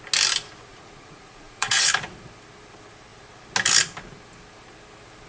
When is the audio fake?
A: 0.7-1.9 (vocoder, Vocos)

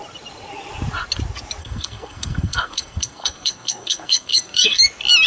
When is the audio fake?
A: 1.6-4.8 (codec, SNAC)

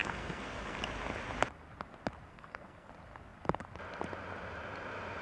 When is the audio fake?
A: 0.0-0.8 (codec, SNAC); 2.3-2.9

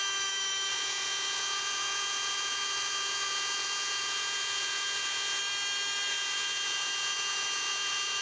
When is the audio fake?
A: 0.7-5.4 (vocoder, Vocos); 6.1-8.2

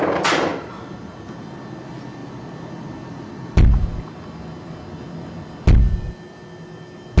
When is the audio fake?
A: none

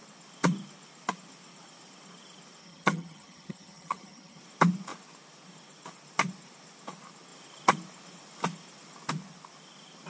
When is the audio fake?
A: 2.6-4.4 (vocoder, HiFi-GAN)

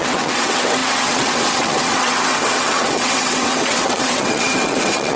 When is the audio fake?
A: 0.0-5.2 (vocoder, WaveNeXt)